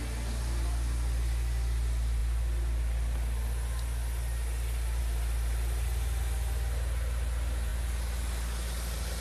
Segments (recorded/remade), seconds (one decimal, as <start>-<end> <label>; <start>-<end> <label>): 0.0-9.2 recorded